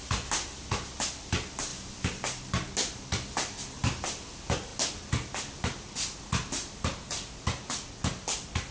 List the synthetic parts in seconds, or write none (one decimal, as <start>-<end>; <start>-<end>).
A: none